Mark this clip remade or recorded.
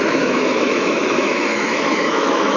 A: remade